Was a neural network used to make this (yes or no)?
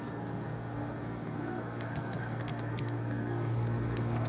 yes